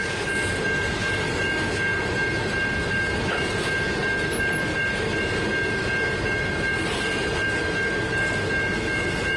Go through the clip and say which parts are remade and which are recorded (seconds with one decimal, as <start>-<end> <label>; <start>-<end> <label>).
0.0-9.4 recorded

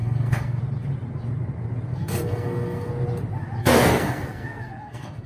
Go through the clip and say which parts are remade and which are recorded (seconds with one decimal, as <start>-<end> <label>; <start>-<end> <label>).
0.0-0.6 remade; 0.6-1.9 recorded; 1.9-2.9 remade; 2.9-3.6 recorded; 3.6-5.3 remade

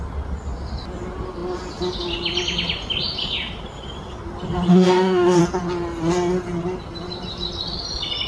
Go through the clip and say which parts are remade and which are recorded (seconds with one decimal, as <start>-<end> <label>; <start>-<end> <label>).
0.0-4.7 recorded; 4.7-5.4 remade; 5.4-8.3 recorded